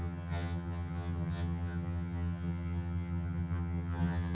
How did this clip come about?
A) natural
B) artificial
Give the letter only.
B